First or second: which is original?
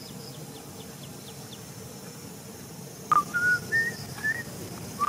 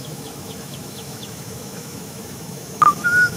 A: first